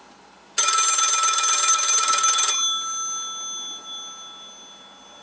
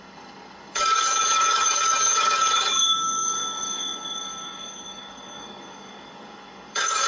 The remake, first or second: second